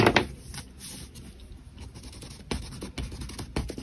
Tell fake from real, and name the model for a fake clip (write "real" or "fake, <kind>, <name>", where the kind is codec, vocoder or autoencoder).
real